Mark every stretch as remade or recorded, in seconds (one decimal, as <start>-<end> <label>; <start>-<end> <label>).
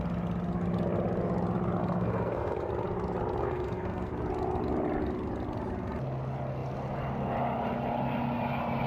0.0-1.8 recorded; 1.8-2.7 remade; 2.7-3.4 recorded; 3.4-4.1 remade; 4.1-8.9 recorded